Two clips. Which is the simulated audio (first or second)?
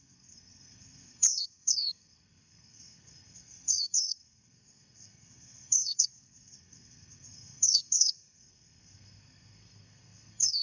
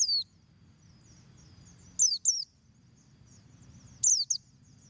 first